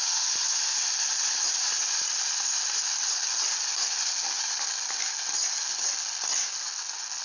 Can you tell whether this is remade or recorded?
recorded